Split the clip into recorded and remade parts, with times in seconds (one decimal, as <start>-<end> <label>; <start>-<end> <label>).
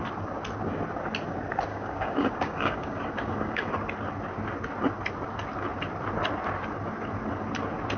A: 0.0-1.7 recorded; 1.7-3.7 remade; 3.7-8.0 recorded